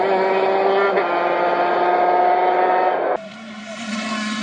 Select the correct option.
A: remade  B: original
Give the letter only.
B